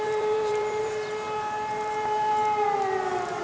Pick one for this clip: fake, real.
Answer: fake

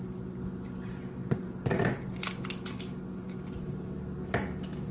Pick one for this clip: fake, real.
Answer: real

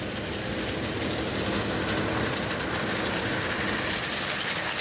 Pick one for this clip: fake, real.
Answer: real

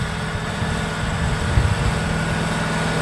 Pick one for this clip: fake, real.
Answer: real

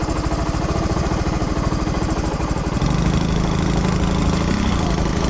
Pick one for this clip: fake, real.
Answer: real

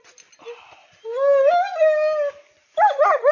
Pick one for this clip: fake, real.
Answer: real